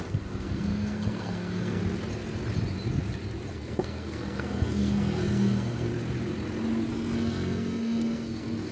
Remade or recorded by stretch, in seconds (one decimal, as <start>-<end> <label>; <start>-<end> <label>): 0.0-1.8 remade; 1.8-3.5 recorded; 3.5-5.9 remade; 5.9-6.9 recorded; 6.9-8.7 remade